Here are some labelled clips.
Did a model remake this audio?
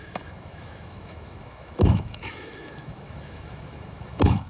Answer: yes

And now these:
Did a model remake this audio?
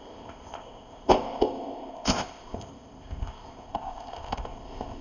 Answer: yes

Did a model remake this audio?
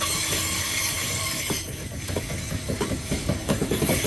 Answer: yes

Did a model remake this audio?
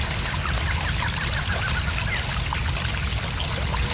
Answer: no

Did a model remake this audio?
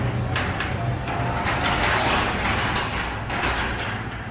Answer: no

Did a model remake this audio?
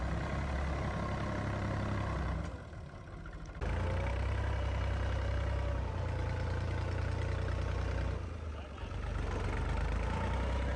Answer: no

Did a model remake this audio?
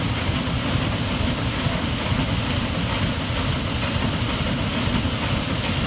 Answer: no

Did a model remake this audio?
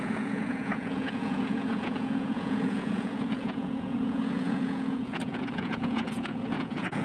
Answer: yes